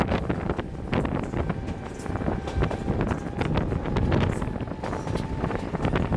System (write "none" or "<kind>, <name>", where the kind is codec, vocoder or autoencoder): none